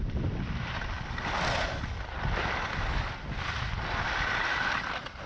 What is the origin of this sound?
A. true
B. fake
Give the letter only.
A